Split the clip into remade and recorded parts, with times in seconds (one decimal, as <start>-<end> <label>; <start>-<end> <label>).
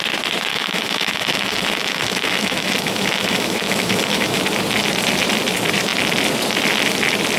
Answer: 0.0-0.5 recorded; 0.5-4.4 remade; 4.4-7.4 recorded